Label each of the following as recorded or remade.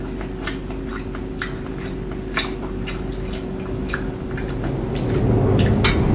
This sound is recorded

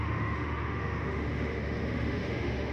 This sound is remade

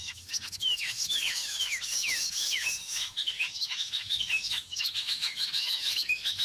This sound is remade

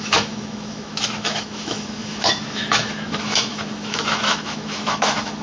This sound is remade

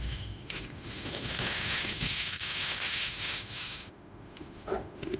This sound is remade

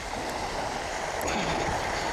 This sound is recorded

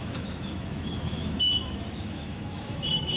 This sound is remade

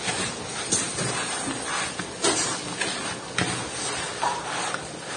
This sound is recorded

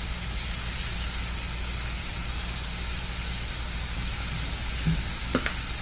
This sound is recorded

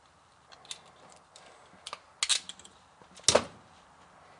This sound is recorded